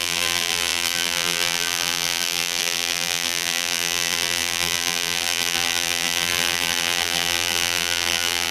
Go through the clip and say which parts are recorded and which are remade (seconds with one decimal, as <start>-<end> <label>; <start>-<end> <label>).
0.0-8.5 remade